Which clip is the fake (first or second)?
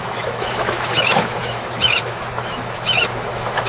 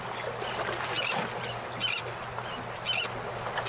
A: first